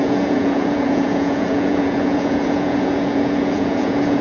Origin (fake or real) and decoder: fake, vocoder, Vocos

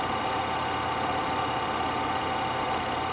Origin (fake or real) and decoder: real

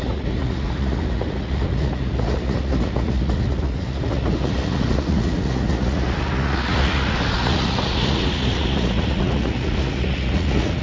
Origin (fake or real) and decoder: fake, vocoder, Vocos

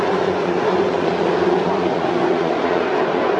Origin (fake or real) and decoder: fake, vocoder, Vocos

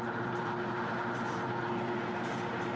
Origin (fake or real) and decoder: real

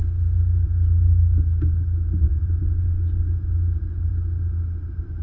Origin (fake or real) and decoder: real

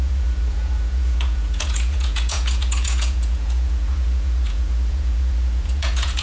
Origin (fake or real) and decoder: fake, vocoder, Vocos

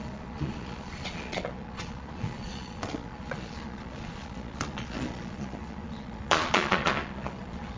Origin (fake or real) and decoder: fake, vocoder, Vocos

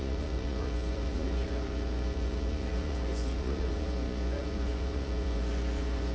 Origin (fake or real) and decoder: fake, vocoder, Vocos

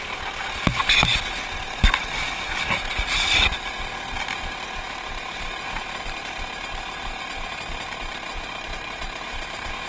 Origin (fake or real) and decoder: real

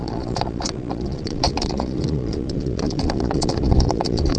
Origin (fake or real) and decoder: fake, vocoder, Vocos